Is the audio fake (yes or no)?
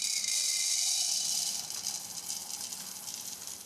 no